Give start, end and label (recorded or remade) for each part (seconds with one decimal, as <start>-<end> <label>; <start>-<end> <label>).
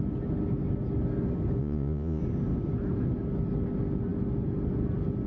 0.0-1.6 recorded; 1.6-2.2 remade; 2.2-5.3 recorded